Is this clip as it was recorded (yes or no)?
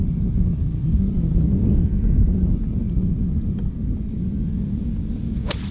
yes